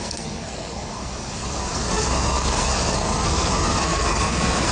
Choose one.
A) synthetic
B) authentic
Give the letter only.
A